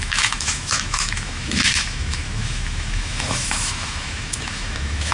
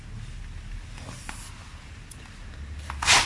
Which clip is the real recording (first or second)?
second